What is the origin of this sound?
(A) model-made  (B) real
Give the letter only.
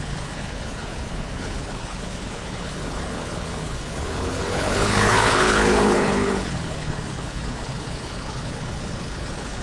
A